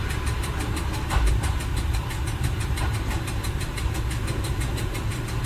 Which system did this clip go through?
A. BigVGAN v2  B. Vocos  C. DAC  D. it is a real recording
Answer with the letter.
A